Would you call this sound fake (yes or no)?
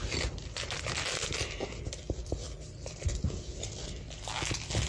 no